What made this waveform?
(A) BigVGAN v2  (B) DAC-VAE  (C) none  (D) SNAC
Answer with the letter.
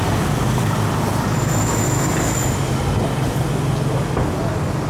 C